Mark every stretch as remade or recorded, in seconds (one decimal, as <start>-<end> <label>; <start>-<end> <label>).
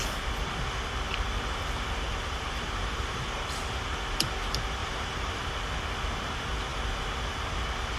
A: 0.0-2.1 recorded; 2.1-3.2 remade; 3.2-4.8 recorded; 4.8-5.5 remade; 5.5-8.0 recorded